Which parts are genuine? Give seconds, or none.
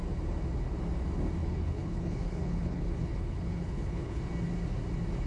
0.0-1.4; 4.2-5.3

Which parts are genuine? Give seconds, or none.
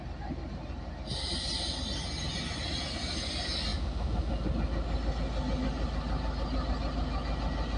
0.0-7.8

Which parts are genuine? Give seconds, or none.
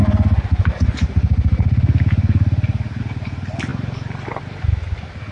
0.0-5.3